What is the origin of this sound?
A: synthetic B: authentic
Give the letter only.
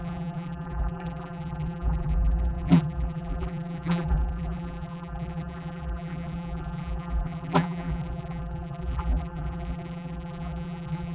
A